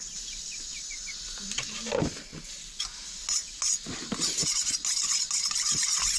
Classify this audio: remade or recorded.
recorded